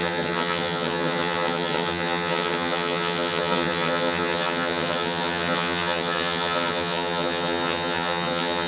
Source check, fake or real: fake